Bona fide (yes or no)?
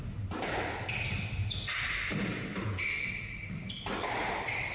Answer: yes